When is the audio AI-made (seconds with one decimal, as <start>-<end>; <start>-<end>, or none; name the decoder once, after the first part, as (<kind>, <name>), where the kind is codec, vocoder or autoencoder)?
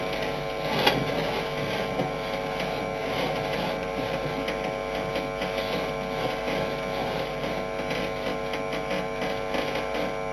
3.0-4.3 (vocoder, BigVGAN v2); 7.0-7.5